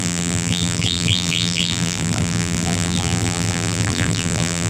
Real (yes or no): no